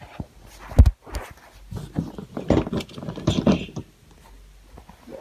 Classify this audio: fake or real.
real